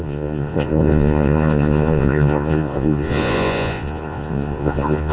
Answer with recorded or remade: remade